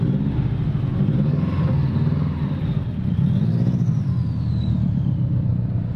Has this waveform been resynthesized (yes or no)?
no